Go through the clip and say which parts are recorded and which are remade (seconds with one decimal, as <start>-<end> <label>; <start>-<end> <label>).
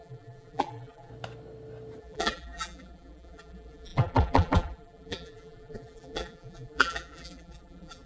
0.0-1.1 remade; 1.1-2.0 recorded; 2.0-8.1 remade